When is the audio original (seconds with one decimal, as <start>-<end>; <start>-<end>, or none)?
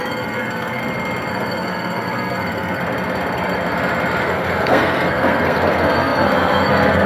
0.8-1.3; 2.8-4.2